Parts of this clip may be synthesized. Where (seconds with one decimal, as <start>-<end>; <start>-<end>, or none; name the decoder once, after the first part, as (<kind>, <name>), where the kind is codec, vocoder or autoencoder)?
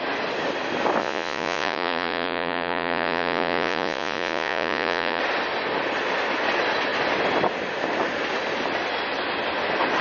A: 1.0-5.2 (vocoder, Vocos)